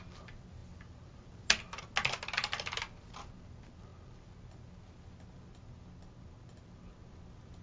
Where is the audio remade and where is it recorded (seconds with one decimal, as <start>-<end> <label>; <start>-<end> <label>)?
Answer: 0.0-7.6 recorded